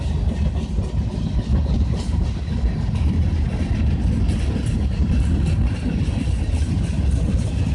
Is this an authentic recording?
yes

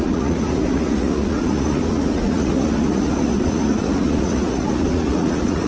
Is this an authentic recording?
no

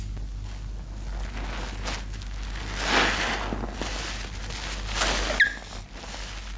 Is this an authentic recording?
yes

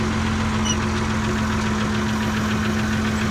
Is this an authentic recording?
yes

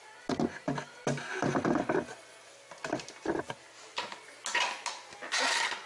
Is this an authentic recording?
yes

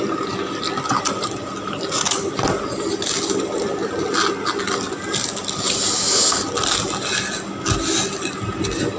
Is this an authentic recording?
yes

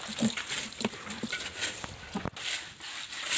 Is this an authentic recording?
yes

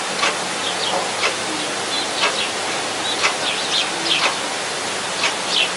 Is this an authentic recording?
yes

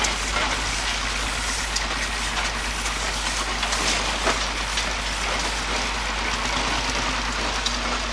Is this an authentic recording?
yes